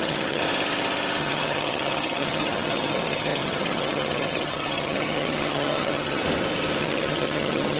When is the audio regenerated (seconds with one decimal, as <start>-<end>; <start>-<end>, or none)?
0.0-0.4; 1.2-6.2; 6.8-7.8